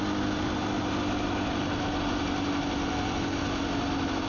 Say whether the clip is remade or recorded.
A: recorded